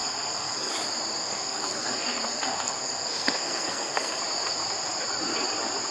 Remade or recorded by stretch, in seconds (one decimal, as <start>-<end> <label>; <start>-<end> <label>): 0.0-0.7 remade; 0.7-1.2 recorded; 1.2-4.2 remade; 4.2-5.9 recorded